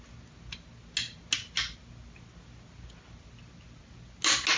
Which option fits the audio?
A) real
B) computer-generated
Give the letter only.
A